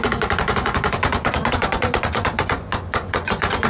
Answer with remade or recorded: remade